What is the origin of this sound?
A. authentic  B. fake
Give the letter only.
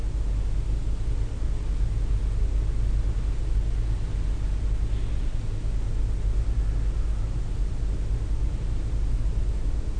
A